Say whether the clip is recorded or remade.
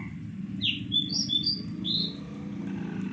recorded